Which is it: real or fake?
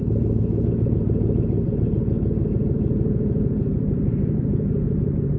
fake